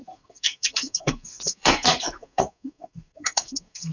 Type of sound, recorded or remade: remade